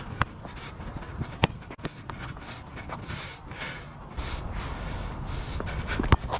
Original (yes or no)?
yes